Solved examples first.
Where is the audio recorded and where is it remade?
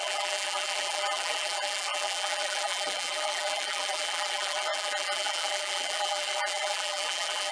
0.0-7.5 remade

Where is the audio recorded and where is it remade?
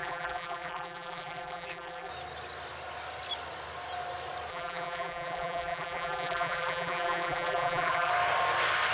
0.0-2.1 remade; 2.1-4.5 recorded; 4.5-8.1 remade; 8.1-8.9 recorded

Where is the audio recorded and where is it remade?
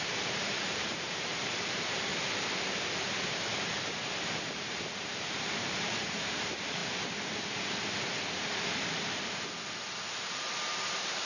0.0-2.1 remade; 2.1-3.7 recorded; 3.7-6.8 remade; 6.8-10.2 recorded; 10.2-11.3 remade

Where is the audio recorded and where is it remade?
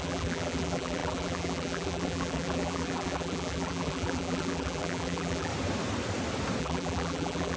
0.0-5.5 remade; 5.5-6.6 recorded; 6.6-7.6 remade